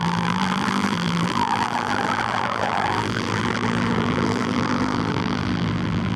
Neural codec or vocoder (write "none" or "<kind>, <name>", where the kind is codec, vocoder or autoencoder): vocoder, BigVGAN v2